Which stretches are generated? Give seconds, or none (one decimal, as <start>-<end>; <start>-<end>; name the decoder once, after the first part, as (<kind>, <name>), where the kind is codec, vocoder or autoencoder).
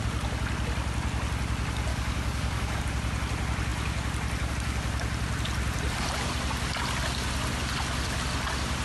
1.9-2.8 (codec, DAC)